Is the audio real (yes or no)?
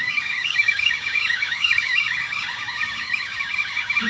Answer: no